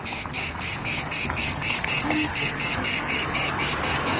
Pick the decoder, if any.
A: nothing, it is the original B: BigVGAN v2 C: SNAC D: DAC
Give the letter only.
D